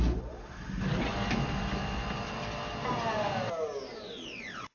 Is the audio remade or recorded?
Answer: recorded